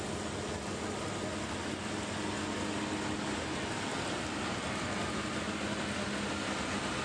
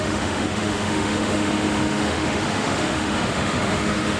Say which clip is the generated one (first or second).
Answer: second